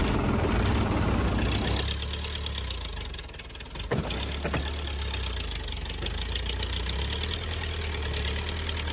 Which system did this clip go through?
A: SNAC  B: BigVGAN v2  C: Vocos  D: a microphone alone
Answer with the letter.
D